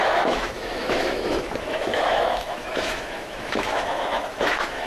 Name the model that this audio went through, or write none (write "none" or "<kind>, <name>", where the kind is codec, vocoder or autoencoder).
autoencoder, DAC-VAE